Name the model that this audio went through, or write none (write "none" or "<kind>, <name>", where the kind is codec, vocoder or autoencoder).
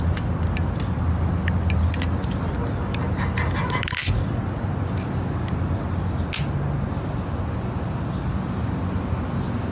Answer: none